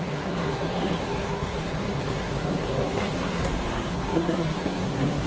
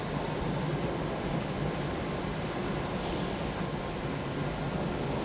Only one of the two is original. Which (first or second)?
second